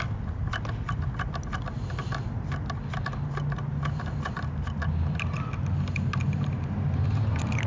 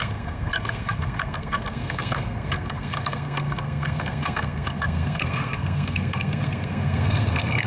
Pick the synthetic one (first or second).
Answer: second